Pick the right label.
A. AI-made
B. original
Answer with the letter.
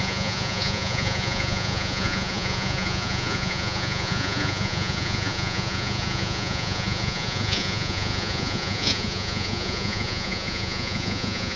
A